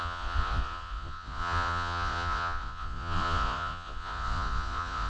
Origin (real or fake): fake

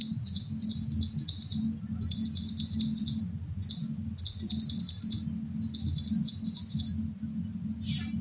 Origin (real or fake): real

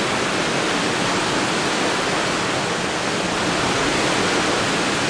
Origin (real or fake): real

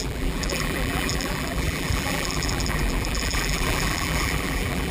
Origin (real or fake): fake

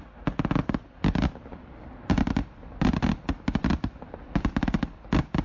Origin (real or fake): real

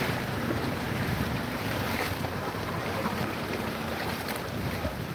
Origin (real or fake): fake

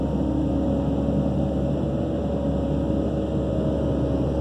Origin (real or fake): real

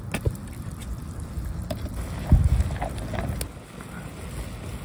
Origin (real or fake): real